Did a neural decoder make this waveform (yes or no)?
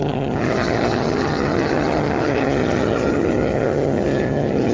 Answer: yes